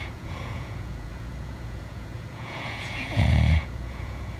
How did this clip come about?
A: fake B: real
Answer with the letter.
A